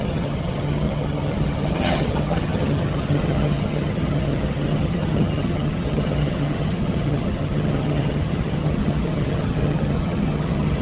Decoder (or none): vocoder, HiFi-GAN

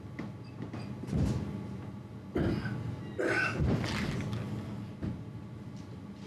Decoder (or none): none